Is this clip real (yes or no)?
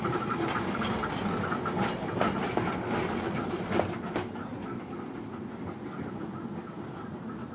yes